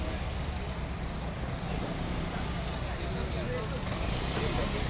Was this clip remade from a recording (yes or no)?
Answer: no